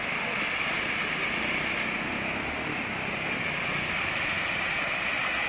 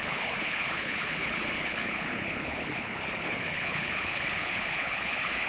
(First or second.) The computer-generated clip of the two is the second